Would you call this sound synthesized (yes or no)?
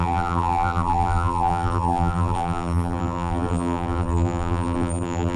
yes